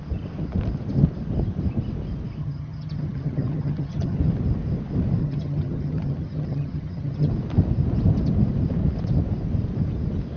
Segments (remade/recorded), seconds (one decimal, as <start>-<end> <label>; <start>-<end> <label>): 0.0-2.4 recorded; 2.4-4.2 remade; 4.2-5.2 recorded; 5.2-7.3 remade; 7.3-10.4 recorded